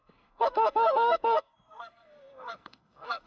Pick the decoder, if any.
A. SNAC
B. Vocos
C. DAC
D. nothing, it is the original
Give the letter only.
A